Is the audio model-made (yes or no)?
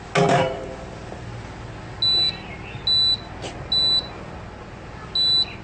no